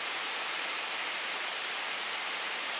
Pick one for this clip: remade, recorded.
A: remade